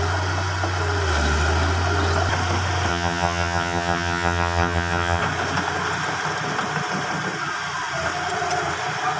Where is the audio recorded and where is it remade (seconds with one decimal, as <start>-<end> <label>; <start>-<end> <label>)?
0.0-2.9 recorded; 2.9-5.2 remade; 5.2-9.2 recorded